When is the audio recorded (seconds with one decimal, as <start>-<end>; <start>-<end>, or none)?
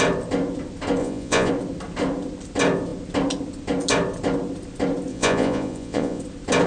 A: 0.0-1.0; 1.5-5.1; 6.2-6.7